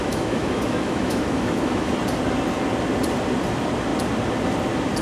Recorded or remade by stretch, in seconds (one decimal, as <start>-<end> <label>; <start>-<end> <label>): 0.0-1.9 remade; 1.9-5.0 recorded